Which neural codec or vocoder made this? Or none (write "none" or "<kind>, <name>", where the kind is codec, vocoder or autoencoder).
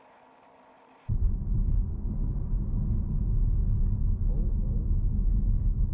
none